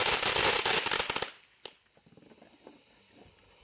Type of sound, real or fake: real